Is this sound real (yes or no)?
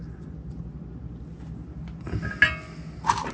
yes